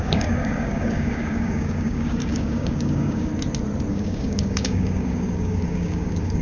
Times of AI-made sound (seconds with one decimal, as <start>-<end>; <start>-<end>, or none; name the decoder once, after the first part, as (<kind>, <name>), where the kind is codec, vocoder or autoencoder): 0.0-3.3 (codec, DAC); 3.9-6.4